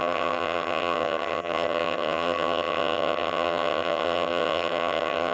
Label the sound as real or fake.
fake